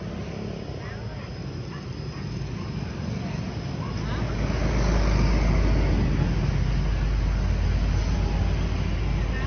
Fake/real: real